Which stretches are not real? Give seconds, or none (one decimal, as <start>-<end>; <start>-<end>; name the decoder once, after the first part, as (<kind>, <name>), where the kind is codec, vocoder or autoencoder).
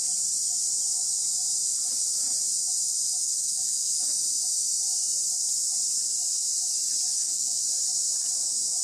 3.2-4.0 (codec, SNAC); 7.1-7.6